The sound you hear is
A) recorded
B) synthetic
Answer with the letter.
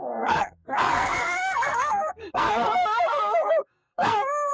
B